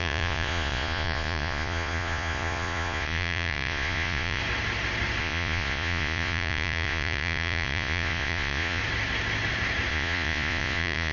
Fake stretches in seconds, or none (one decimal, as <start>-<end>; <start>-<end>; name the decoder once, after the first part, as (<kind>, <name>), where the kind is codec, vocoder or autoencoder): 0.0-4.4 (vocoder, Vocos); 5.2-8.8; 9.9-11.1